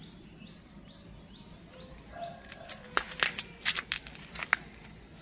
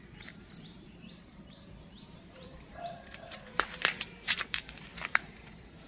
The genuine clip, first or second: first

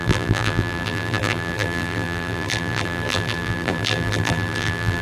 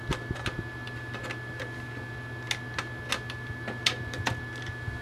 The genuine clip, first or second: second